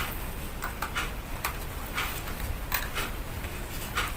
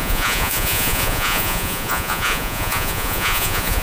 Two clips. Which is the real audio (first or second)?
first